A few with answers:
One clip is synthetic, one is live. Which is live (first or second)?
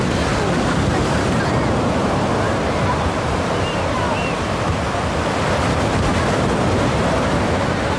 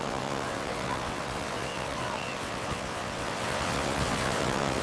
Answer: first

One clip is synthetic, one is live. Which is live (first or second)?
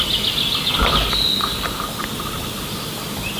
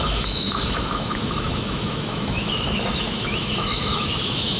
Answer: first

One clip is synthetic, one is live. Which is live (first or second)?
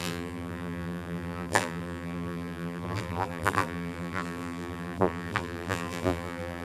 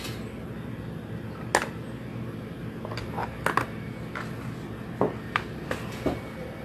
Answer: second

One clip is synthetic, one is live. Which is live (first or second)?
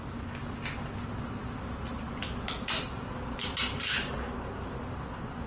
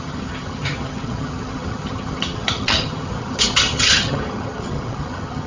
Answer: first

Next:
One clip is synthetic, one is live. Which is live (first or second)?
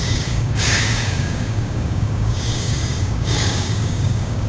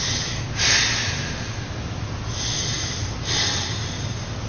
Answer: second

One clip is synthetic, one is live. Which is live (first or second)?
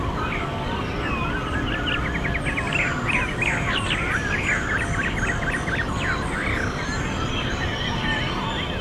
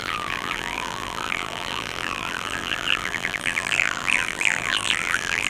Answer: first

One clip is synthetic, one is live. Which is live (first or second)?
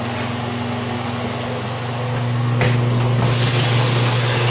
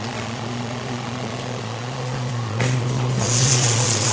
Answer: first